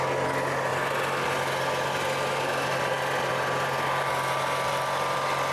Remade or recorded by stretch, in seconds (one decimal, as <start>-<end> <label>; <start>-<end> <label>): 0.0-5.5 recorded